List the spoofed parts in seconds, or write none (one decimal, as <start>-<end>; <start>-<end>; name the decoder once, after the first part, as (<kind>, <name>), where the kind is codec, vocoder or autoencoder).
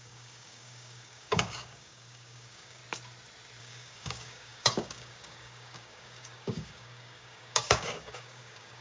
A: 0.0-2.8 (codec, DAC); 3.6-8.8